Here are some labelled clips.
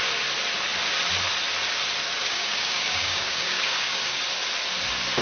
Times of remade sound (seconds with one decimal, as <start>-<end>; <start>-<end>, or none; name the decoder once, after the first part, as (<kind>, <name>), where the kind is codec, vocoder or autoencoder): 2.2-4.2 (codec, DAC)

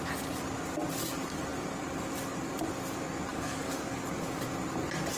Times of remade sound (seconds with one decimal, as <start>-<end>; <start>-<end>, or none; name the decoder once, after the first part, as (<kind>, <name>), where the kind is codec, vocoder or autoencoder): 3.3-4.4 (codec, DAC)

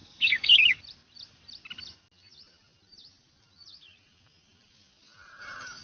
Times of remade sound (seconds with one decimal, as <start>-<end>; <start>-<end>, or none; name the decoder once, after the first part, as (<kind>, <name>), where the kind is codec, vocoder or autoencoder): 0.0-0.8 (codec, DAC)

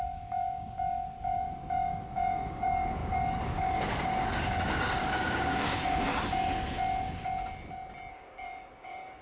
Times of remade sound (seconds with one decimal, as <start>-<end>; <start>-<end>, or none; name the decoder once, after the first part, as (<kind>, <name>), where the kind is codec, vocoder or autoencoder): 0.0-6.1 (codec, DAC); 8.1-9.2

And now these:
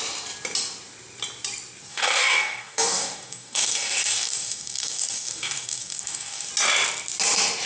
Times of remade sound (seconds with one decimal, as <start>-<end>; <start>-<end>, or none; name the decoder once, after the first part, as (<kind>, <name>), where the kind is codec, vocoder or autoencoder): 1.9-6.5 (codec, DAC)

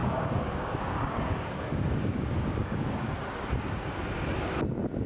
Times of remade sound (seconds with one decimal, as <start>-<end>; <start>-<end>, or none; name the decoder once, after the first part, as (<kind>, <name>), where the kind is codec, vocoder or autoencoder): 0.0-3.1 (codec, DAC)

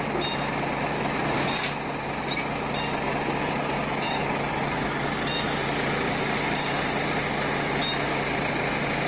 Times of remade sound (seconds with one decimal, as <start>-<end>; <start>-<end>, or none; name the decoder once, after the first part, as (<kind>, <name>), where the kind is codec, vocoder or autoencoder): 3.4-5.0 (codec, DAC)

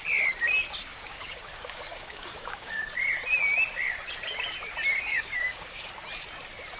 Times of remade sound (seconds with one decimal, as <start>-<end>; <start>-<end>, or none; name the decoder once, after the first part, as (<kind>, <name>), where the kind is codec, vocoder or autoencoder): 0.9-2.8 (codec, DAC); 5.1-5.9